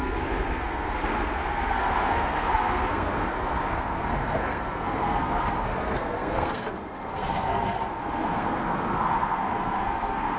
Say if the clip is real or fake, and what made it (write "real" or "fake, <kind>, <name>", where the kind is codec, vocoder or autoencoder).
fake, codec, SNAC